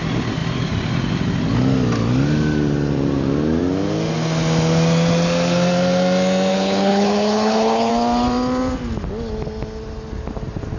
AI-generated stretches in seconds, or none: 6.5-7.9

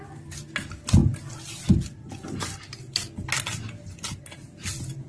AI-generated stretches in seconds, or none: none

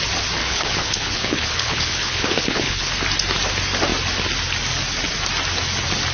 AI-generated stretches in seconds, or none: 0.4-2.9

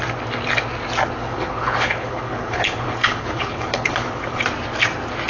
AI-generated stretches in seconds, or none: 1.2-4.4